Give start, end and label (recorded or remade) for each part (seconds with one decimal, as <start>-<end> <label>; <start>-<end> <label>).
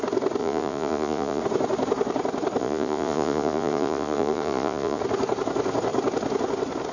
0.0-0.4 recorded; 0.4-1.4 remade; 1.4-2.6 recorded; 2.6-5.0 remade; 5.0-6.9 recorded